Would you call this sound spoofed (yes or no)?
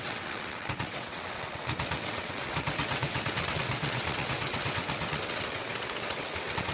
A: yes